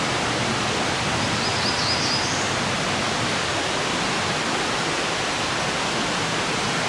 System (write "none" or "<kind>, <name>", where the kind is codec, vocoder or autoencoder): none